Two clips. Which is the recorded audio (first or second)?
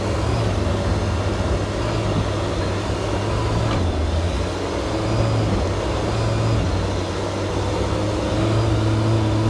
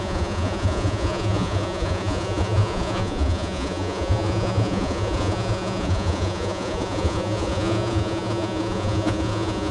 first